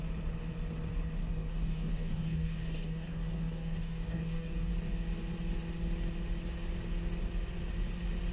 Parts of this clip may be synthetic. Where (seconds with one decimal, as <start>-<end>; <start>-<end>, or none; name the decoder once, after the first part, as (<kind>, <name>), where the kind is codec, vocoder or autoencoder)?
1.2-4.7 (codec, DAC)